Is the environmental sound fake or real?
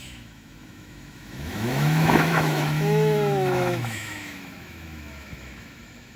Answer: fake